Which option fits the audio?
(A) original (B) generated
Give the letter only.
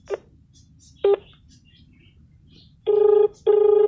A